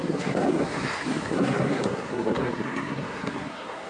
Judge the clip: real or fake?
fake